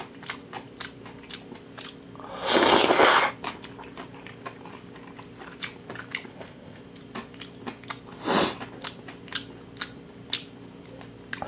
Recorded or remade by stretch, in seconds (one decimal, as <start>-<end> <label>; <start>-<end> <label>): 0.0-6.3 recorded; 6.3-6.8 remade; 6.8-11.5 recorded